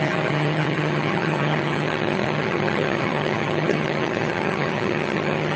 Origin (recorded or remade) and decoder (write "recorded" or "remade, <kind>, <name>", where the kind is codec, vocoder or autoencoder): remade, vocoder, HiFi-GAN